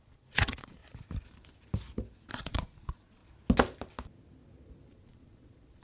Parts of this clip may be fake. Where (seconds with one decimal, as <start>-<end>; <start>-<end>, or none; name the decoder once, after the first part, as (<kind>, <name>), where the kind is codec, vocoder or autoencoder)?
0.0-0.8 (vocoder, Vocos); 2.3-3.2; 4.9-5.8